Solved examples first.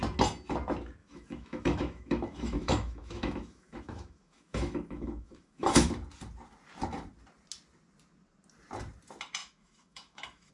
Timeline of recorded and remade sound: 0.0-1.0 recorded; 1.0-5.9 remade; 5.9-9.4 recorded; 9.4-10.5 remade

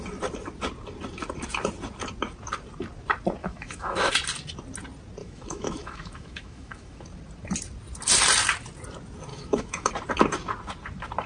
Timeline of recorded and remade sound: 0.0-3.4 recorded; 3.4-4.1 remade; 4.1-5.2 recorded; 5.2-7.0 remade; 7.0-9.3 recorded; 9.3-9.9 remade; 9.9-11.3 recorded

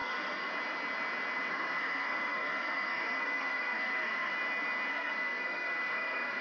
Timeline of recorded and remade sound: 0.0-0.5 remade; 0.5-1.5 recorded; 1.5-4.3 remade; 4.3-4.9 recorded; 4.9-6.4 remade